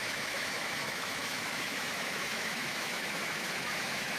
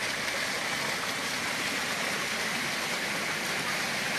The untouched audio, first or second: second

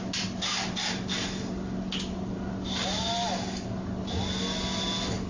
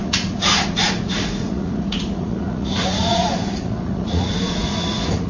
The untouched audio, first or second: first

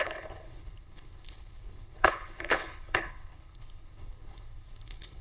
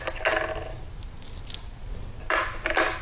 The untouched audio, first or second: second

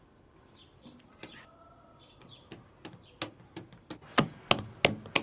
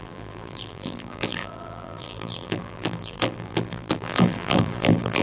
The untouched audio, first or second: first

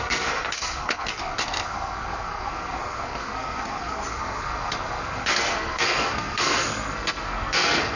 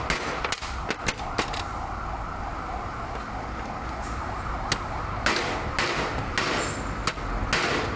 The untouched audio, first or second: second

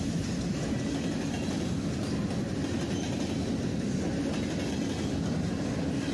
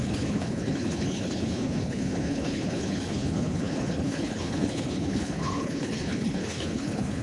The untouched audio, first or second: first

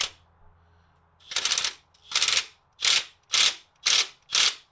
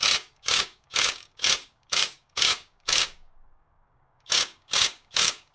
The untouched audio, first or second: first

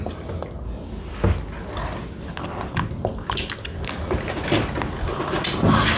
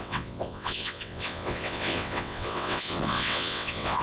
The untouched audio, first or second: first